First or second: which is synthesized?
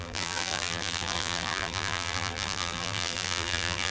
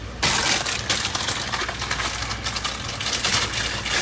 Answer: first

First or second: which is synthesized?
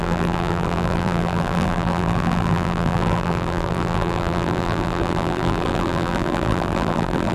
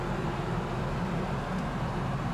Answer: first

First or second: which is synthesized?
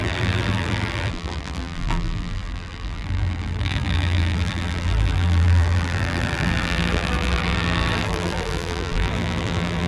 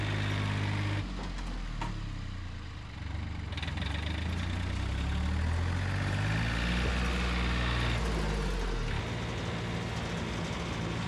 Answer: first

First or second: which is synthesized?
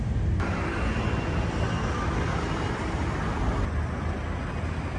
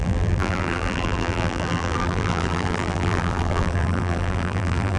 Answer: second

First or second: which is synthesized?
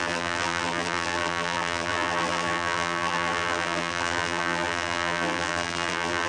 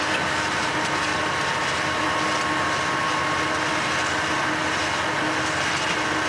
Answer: first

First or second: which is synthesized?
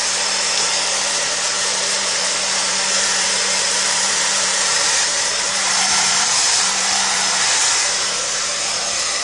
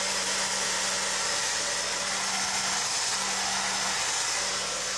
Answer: first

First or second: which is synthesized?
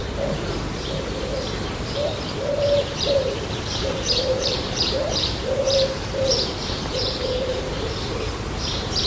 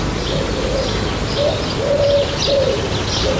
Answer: first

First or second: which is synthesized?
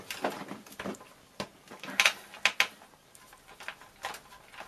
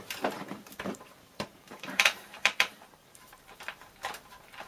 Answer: second